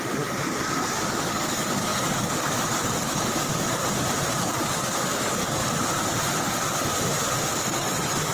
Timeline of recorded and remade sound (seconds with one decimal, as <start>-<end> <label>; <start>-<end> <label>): 0.0-3.8 remade; 3.8-4.3 recorded; 4.3-5.6 remade; 5.6-6.4 recorded; 6.4-6.9 remade; 6.9-7.5 recorded; 7.5-8.3 remade

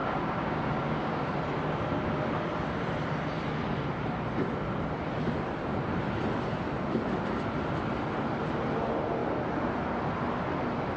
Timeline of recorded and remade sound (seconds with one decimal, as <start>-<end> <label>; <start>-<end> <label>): 0.0-1.2 remade; 1.2-11.0 recorded

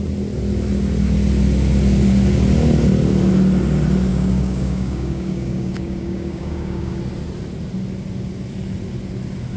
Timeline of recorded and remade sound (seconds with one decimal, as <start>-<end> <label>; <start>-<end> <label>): 0.0-4.1 recorded; 4.1-7.0 remade; 7.0-9.6 recorded

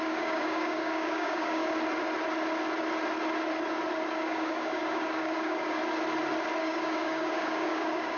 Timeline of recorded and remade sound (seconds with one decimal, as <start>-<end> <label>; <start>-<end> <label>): 0.0-1.6 remade; 1.6-4.1 recorded; 4.1-5.8 remade; 5.8-6.6 recorded; 6.6-8.2 remade